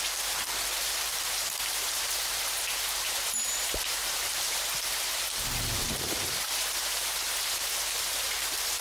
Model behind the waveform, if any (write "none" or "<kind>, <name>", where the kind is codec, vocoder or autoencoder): vocoder, BigVGAN v2